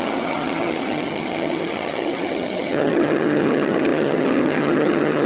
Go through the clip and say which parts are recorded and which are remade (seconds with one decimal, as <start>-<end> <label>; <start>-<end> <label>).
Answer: 0.0-5.3 remade